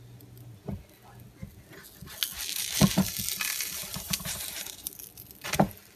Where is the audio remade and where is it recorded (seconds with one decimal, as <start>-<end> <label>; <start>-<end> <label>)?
0.0-3.8 recorded; 3.8-4.9 remade; 4.9-6.0 recorded